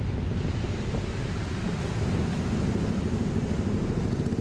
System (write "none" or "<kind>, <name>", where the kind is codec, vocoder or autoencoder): none